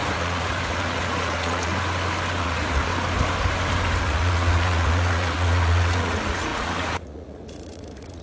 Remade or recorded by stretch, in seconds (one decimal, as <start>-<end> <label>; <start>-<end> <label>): 0.0-1.7 remade; 1.7-2.4 recorded; 2.4-2.9 remade; 2.9-4.0 recorded; 4.0-8.2 remade